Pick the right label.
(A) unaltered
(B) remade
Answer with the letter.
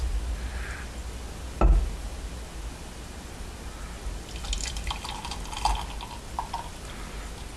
A